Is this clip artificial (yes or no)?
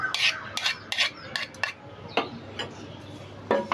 no